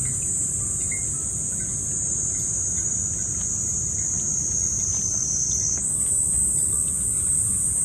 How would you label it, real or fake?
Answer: real